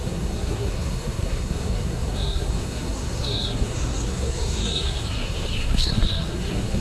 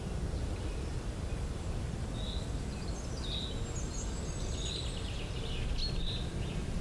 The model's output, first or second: first